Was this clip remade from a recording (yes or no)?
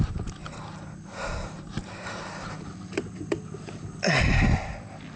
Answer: no